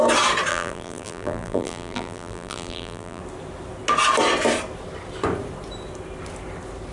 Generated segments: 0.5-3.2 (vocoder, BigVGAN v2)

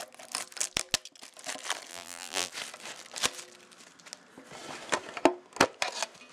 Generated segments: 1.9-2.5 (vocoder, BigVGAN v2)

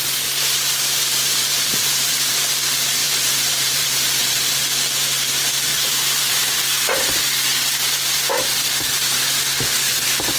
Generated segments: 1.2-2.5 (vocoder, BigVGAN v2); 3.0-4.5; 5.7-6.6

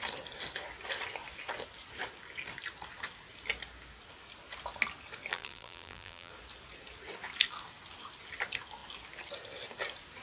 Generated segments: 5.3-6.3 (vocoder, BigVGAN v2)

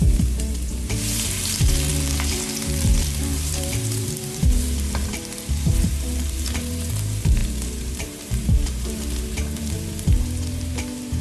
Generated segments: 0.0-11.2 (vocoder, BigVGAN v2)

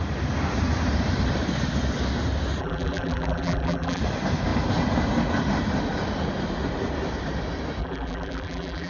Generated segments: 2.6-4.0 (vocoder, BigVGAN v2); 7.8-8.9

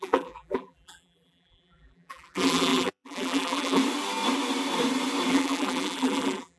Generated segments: 0.0-3.8 (vocoder, BigVGAN v2); 5.3-6.6